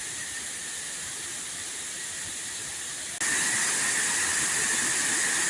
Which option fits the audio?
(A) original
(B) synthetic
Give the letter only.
A